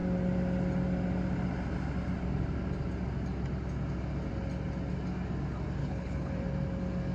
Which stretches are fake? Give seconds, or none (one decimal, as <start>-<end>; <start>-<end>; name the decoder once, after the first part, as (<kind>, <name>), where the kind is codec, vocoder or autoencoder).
5.8-6.3 (codec, HILCodec)